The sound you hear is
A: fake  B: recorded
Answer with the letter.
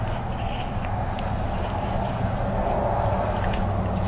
B